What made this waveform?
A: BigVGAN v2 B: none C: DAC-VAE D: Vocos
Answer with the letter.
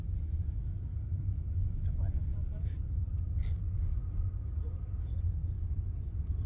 B